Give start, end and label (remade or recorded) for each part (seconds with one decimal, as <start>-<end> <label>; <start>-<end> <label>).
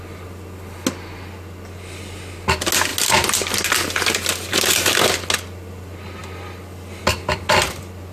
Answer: 0.0-8.1 recorded